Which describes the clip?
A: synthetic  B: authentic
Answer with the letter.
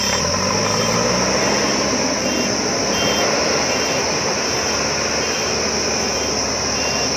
B